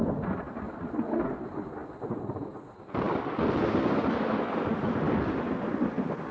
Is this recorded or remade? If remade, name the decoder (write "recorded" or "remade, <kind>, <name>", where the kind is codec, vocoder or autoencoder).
recorded